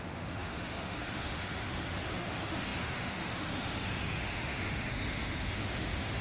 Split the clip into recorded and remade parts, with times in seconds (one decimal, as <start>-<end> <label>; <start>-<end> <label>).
0.0-6.2 remade